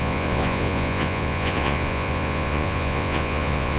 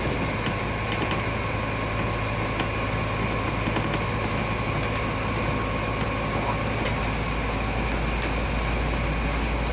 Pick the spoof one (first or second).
first